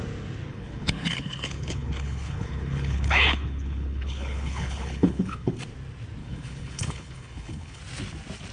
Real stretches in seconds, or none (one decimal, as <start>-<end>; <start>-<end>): 0.0-0.5; 5.6-6.2; 7.8-8.5